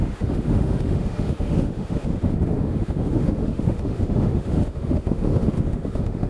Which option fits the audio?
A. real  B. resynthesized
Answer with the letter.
B